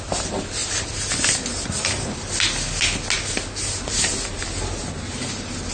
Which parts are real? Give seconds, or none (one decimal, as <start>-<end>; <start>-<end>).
0.0-5.7